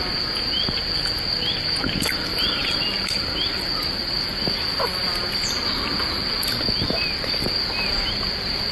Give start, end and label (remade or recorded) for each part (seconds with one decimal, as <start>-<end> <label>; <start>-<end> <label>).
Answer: 0.0-8.7 recorded